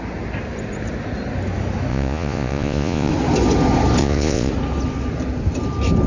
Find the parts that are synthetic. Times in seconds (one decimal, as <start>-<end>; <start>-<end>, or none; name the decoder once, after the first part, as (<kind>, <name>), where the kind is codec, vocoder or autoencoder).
1.9-3.1 (vocoder, Vocos); 4.0-4.5